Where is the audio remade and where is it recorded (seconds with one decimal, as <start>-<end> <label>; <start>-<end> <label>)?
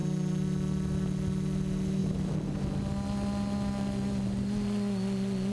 0.0-5.5 recorded